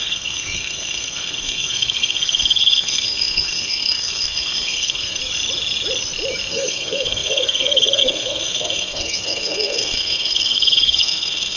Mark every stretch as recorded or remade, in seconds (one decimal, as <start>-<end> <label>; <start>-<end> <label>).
0.0-5.2 remade; 5.2-6.5 recorded; 6.5-11.6 remade